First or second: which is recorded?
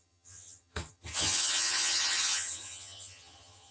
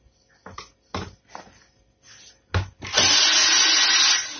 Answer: second